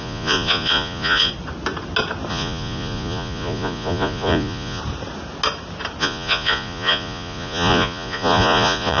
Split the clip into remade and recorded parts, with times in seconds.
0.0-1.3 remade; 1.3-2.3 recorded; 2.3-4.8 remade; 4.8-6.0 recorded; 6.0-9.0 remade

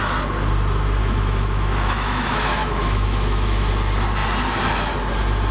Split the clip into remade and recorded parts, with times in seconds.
0.0-1.0 recorded; 1.0-3.7 remade; 3.7-5.5 recorded

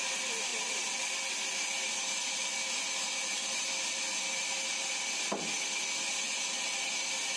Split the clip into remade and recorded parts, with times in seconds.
0.0-7.4 recorded